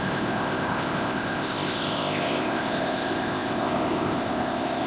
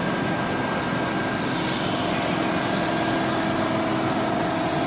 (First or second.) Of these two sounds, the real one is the second